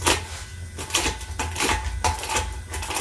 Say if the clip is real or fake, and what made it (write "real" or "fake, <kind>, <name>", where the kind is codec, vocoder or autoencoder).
real